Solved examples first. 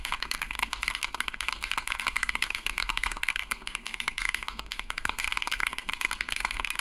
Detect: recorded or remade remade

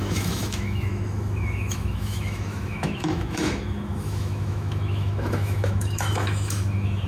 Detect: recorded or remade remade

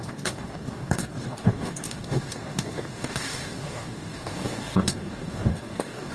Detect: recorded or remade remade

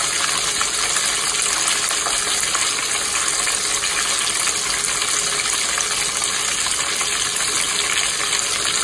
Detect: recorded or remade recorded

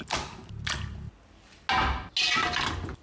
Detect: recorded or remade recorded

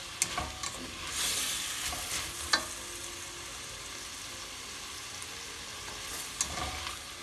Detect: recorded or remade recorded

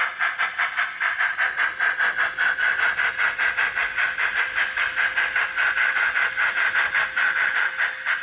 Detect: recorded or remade recorded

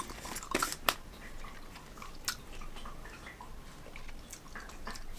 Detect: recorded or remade recorded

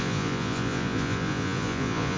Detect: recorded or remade remade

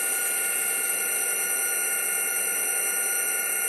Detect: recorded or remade recorded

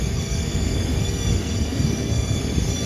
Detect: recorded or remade remade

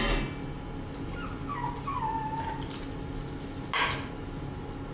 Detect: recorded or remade recorded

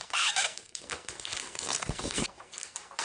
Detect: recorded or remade remade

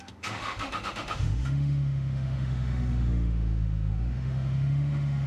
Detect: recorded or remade remade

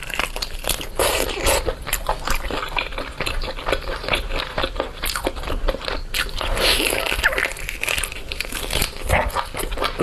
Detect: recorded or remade recorded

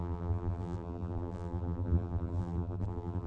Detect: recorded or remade remade